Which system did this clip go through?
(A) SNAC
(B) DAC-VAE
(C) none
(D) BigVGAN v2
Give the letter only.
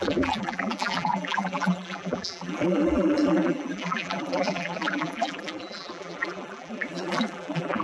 D